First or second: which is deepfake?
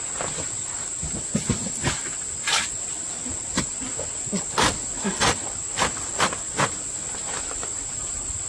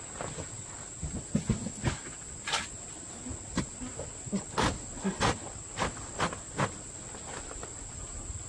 first